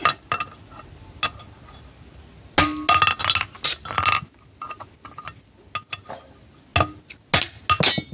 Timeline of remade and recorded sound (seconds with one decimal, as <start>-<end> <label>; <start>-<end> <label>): 0.0-8.1 recorded